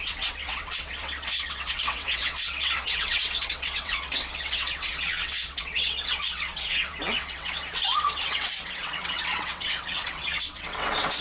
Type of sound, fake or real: fake